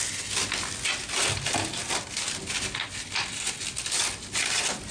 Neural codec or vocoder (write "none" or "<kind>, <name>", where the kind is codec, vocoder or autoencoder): none